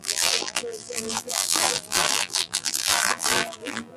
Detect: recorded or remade remade